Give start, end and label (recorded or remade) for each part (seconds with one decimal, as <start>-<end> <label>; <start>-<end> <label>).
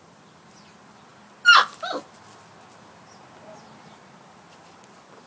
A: 0.0-5.3 recorded